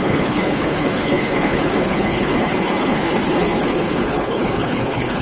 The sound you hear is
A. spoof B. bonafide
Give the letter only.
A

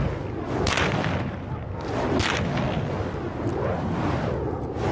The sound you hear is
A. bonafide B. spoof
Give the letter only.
A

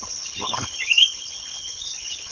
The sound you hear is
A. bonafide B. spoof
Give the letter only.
B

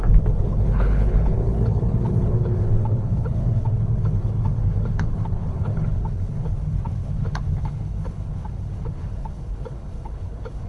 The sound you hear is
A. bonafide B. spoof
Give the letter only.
B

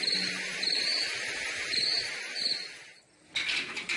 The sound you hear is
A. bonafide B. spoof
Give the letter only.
A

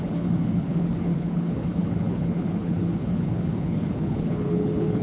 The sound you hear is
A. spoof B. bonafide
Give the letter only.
A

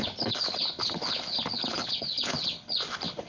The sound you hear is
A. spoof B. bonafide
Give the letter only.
A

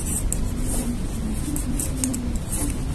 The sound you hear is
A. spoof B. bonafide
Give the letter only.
B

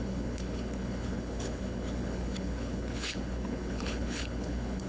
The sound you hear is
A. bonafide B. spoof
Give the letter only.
B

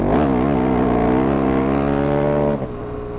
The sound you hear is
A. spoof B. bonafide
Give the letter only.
B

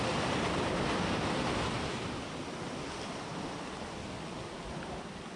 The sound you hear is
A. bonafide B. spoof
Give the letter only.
A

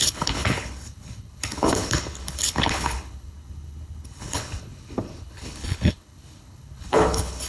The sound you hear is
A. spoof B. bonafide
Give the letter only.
A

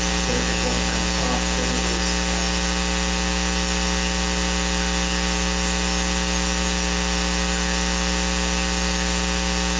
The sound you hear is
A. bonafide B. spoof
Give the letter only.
A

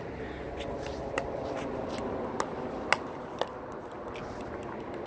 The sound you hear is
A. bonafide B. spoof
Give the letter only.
A